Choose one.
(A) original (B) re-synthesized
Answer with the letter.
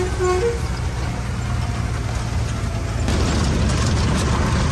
A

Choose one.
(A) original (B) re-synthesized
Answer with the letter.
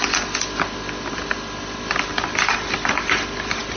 A